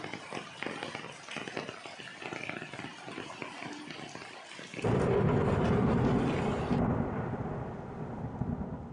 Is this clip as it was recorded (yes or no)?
yes